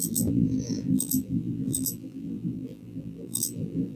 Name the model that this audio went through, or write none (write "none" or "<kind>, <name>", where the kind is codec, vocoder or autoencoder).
vocoder, BigVGAN v2